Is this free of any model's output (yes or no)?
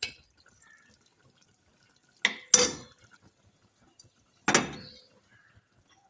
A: yes